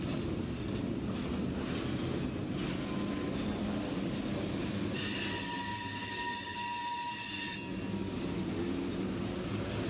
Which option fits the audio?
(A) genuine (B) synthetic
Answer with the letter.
A